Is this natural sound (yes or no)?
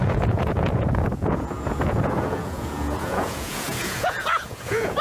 no